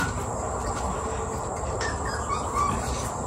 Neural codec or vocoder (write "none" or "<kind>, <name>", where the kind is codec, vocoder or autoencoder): none